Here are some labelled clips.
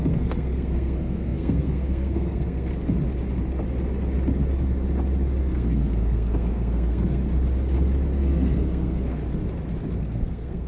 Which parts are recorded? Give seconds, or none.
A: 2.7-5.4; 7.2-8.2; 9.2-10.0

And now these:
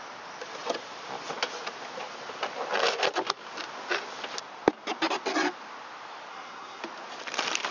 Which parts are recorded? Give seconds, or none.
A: 0.0-6.3; 6.8-7.7

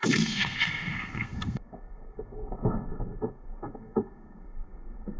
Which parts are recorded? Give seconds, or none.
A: none